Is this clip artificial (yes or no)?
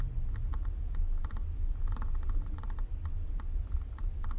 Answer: yes